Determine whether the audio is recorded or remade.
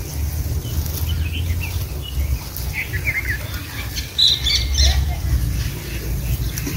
recorded